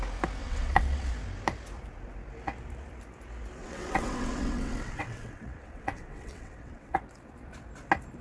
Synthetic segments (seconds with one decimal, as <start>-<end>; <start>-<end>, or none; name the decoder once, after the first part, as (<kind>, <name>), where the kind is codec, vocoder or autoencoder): 0.4-1.1 (vocoder, WaveNeXt); 3.6-7.0